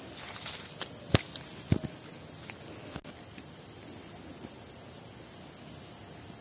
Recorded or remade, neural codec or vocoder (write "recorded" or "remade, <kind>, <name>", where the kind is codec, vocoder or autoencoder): recorded